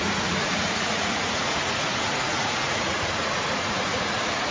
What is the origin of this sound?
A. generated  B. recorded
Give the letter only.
A